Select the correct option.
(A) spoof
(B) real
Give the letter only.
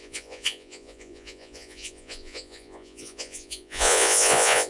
A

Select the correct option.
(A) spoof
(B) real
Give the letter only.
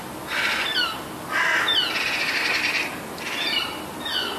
B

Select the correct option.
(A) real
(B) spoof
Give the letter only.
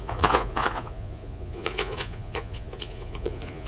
B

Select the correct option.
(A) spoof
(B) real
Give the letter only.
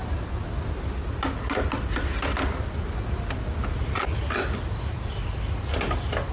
B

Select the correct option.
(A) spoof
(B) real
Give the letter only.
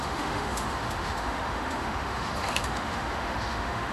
A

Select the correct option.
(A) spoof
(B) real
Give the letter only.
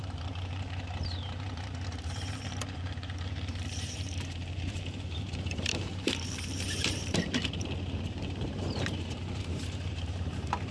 A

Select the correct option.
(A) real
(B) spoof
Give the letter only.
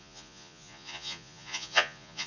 B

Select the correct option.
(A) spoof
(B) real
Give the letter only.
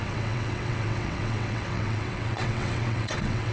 A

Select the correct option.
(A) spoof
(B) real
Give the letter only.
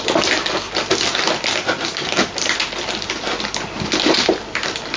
B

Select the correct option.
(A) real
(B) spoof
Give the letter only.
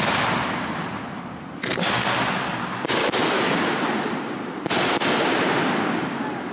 A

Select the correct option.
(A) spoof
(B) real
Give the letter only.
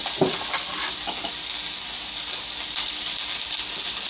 B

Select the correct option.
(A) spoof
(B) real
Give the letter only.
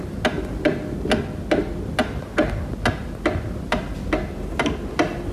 B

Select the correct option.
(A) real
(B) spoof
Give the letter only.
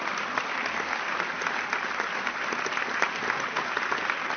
A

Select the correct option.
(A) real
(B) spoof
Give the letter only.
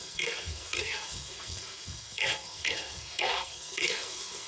B